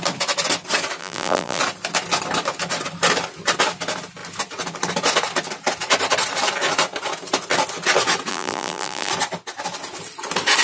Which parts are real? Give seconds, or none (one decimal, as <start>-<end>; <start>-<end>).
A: 0.0-1.0; 1.6-8.3; 9.1-10.6